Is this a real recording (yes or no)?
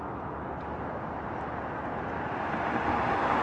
yes